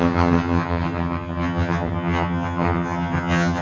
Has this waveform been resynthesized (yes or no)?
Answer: yes